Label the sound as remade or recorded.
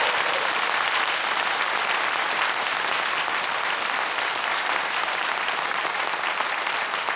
recorded